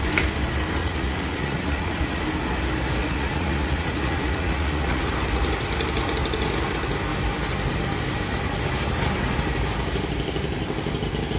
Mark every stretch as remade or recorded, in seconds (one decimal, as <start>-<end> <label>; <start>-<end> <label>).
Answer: 0.0-0.8 recorded; 0.8-2.2 remade; 2.2-3.0 recorded; 3.0-5.1 remade; 5.1-11.4 recorded